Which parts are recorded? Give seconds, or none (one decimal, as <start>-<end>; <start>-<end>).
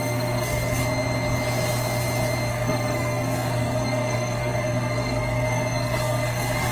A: 0.8-2.5